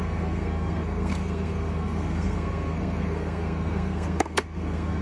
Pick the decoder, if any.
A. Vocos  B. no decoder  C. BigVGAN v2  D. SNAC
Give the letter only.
D